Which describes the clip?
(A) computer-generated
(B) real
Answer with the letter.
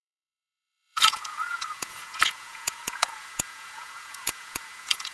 A